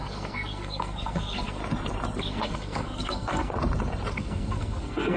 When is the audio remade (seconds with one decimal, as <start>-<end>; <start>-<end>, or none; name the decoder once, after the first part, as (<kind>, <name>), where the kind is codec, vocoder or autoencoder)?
0.0-1.6 (codec, SNAC); 2.2-3.5; 4.1-5.2